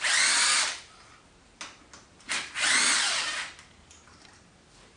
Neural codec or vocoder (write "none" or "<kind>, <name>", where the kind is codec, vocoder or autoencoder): none